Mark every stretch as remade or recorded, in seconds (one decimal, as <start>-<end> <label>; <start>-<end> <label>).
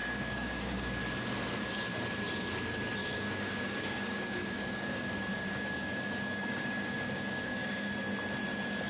0.0-1.0 remade; 1.0-3.0 recorded; 3.0-7.9 remade; 7.9-8.9 recorded